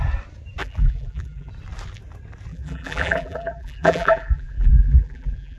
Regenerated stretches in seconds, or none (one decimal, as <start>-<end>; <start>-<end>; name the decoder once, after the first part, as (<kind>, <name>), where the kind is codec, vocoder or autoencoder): 0.6-1.5 (vocoder, BigVGAN v2); 2.5-5.6